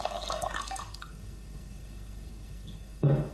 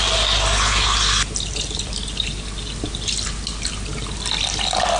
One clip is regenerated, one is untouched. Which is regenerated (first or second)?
first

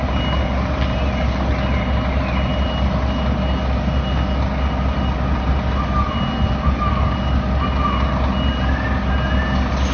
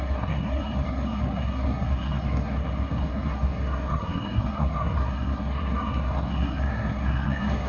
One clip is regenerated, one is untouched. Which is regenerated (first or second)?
second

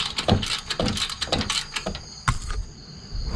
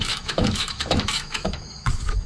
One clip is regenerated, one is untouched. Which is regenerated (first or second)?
second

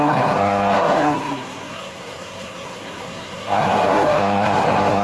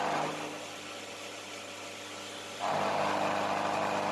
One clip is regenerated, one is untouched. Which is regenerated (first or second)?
first